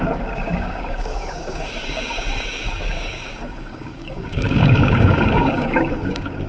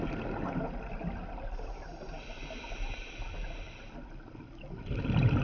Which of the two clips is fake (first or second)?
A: first